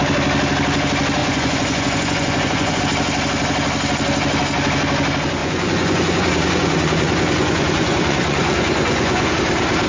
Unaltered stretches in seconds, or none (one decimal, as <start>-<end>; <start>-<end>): 0.0-1.2; 2.8-5.4; 9.3-9.9